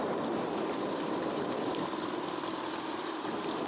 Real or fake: fake